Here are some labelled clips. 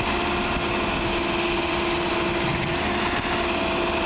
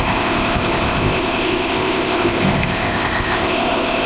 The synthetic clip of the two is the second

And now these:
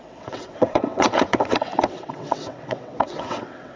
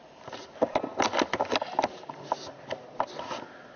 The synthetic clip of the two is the first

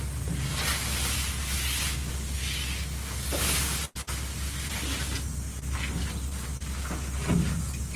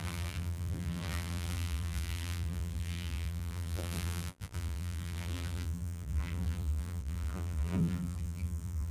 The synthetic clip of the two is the second